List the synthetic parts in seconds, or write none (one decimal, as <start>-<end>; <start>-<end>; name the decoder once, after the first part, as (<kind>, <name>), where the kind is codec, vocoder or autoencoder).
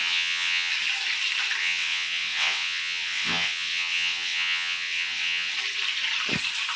0.0-0.7 (vocoder, WaveNeXt); 1.6-5.5